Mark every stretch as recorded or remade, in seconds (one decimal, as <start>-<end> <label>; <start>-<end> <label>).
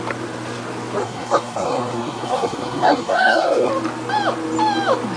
0.0-1.0 recorded; 1.0-3.7 remade; 3.7-5.2 recorded